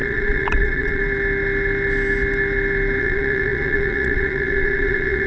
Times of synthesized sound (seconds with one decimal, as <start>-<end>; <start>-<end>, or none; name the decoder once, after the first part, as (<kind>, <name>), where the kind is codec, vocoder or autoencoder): 0.0-1.0 (vocoder, Vocos); 3.0-5.3